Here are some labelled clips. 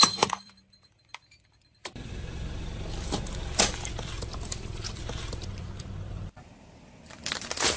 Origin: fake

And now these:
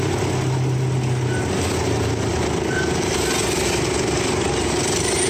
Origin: real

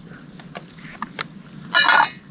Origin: real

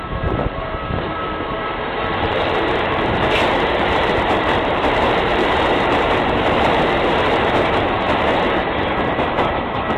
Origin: fake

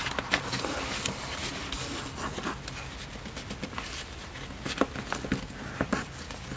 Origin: real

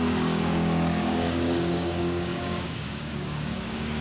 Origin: fake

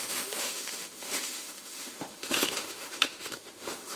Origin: fake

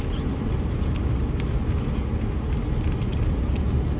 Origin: real